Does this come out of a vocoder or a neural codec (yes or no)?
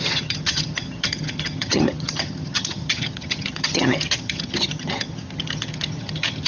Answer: yes